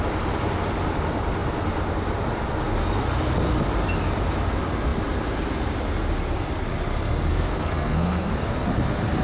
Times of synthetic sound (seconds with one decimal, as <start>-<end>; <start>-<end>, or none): 7.3-8.3